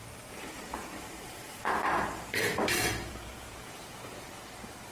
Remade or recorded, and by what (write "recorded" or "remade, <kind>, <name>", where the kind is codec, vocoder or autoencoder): remade, vocoder, BigVGAN v2